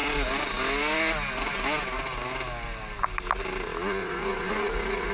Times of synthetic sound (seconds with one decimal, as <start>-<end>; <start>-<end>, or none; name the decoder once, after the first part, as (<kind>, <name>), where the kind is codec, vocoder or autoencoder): 4.0-5.1 (vocoder, Vocos)